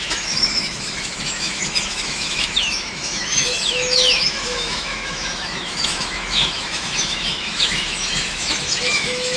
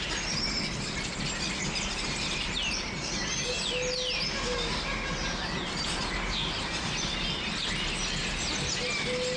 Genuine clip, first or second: second